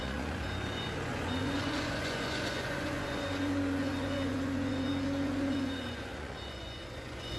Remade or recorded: remade